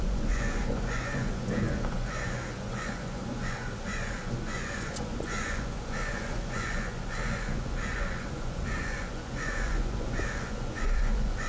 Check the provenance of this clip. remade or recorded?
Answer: remade